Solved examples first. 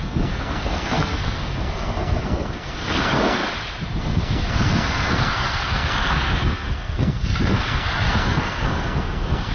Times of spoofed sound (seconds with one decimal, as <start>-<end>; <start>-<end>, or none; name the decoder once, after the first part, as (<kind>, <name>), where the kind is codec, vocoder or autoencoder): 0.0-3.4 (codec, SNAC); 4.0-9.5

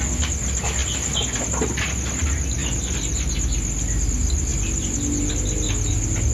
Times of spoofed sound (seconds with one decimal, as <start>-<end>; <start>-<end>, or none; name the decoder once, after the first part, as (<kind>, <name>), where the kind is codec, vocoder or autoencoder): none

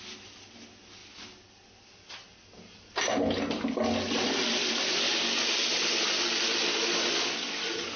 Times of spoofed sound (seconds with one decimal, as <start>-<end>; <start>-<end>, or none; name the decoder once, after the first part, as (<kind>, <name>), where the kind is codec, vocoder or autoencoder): none

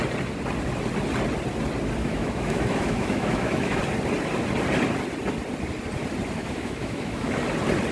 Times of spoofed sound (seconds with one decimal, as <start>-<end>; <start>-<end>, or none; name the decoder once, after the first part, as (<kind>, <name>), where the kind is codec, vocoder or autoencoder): 2.0-3.8 (autoencoder, DAC-VAE); 6.4-7.4

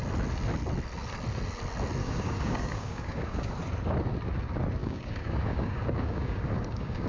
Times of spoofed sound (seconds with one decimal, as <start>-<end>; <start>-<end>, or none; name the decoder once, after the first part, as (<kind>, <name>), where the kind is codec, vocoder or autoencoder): 2.0-3.5 (codec, DAC); 4.8-7.1

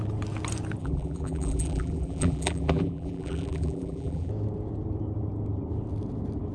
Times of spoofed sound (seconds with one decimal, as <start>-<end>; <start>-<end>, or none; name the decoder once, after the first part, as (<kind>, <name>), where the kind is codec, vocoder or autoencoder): 0.8-4.3 (vocoder, BigVGAN v2)

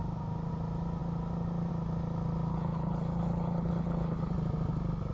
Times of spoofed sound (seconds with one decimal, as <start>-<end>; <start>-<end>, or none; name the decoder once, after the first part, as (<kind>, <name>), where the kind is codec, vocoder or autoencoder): 2.5-4.3 (codec, HILCodec)